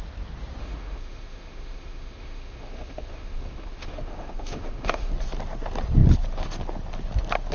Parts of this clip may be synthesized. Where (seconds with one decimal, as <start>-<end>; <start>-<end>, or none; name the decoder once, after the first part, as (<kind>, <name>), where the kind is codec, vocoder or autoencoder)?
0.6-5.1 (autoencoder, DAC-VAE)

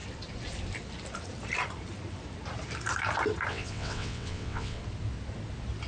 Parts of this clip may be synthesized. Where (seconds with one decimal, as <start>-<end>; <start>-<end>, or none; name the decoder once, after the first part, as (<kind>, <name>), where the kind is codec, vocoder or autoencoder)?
3.5-4.8 (vocoder, WaveNeXt)

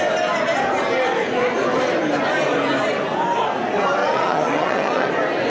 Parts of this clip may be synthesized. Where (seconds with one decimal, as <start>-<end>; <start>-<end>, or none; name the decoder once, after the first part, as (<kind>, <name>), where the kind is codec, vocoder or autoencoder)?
4.0-5.1 (vocoder, WaveNeXt)